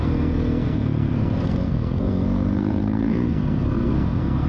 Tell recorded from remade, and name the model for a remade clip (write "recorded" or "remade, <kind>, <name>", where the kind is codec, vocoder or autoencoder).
remade, codec, SNAC